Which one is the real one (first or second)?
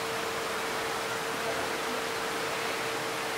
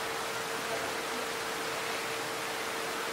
second